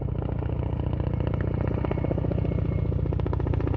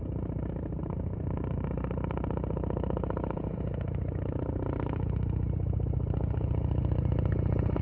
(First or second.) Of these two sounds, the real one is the first